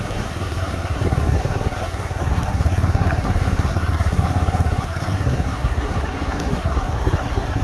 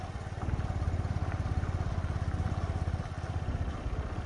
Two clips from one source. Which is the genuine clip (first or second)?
second